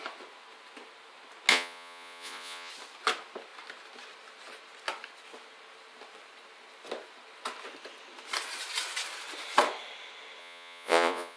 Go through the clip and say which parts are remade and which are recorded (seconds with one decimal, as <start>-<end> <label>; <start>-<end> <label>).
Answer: 0.0-1.5 recorded; 1.5-2.7 remade; 2.7-10.4 recorded; 10.4-11.4 remade